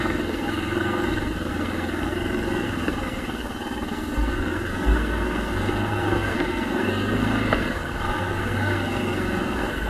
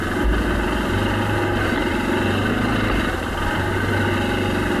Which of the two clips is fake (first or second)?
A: first